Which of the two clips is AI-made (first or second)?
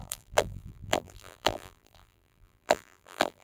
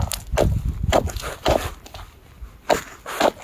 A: first